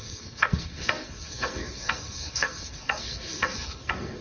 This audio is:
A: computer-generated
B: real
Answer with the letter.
A